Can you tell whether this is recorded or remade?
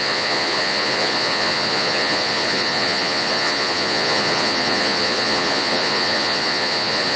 remade